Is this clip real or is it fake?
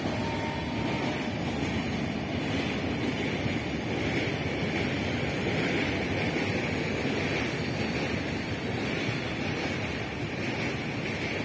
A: real